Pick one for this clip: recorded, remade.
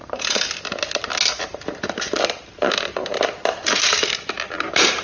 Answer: remade